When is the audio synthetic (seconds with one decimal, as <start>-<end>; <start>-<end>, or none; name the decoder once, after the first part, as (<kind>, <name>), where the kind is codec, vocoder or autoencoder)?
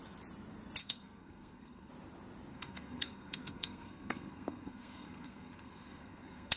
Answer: 0.8-1.9 (codec, SNAC); 2.5-6.6